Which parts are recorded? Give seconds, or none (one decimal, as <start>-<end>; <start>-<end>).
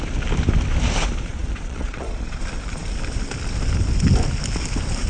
0.0-1.3; 2.4-5.1